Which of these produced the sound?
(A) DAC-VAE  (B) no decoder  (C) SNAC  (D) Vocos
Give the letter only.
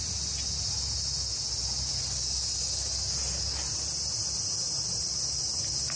B